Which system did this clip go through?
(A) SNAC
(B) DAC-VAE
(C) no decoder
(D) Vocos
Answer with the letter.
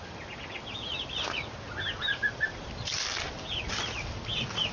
C